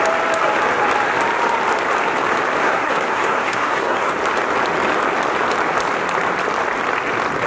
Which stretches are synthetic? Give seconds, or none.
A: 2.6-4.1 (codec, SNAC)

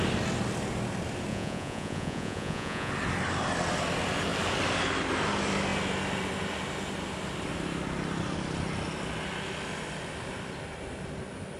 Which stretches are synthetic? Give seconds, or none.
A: 1.3-2.9 (vocoder, Vocos)

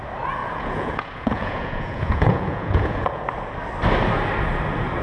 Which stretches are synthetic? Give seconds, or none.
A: 0.4-3.2 (vocoder, Vocos)